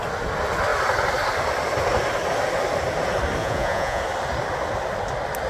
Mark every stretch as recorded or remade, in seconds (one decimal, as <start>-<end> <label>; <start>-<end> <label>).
0.0-3.4 recorded; 3.4-4.0 remade; 4.0-5.5 recorded